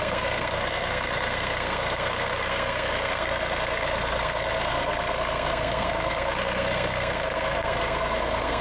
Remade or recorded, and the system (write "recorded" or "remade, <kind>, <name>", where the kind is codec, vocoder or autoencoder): remade, codec, SNAC